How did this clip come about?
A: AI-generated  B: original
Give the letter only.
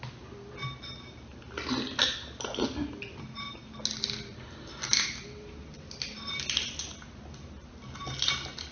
B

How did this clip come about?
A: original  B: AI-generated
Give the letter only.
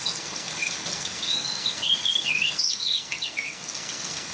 B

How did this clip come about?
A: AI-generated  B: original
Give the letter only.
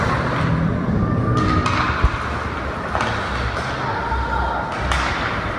B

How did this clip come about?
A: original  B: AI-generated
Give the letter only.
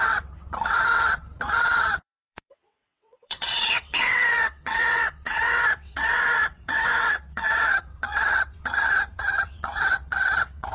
B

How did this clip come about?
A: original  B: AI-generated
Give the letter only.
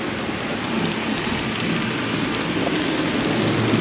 A